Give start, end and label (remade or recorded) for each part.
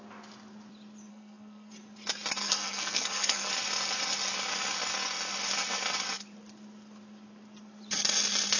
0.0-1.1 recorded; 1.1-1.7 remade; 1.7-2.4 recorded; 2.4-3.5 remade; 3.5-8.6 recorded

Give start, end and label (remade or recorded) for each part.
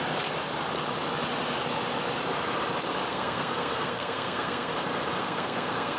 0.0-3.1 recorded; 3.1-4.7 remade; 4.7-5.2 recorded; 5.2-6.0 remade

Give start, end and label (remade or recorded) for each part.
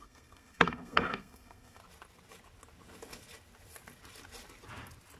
0.0-1.8 remade; 1.8-5.2 recorded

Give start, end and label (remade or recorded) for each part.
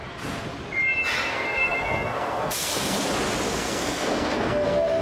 0.0-1.3 recorded; 1.3-3.0 remade; 3.0-3.5 recorded; 3.5-5.0 remade